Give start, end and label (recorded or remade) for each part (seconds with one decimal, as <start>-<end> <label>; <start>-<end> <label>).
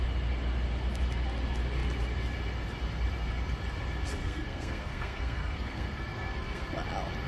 0.0-4.2 recorded; 4.2-6.7 remade; 6.7-7.3 recorded